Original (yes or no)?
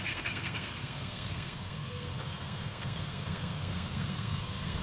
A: no